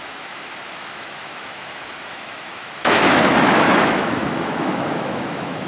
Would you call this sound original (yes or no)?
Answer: no